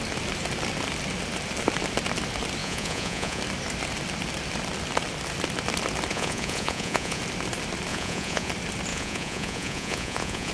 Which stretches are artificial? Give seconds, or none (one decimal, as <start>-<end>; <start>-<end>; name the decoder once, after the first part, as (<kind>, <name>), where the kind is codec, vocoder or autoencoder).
2.6-3.4 (vocoder, Vocos); 6.1-7.2; 7.9-8.5; 8.9-10.5